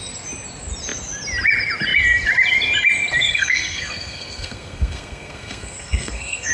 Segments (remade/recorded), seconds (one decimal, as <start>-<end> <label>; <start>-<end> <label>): 0.0-3.2 recorded; 3.2-6.5 remade